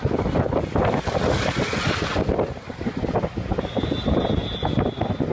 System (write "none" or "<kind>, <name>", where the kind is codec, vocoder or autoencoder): none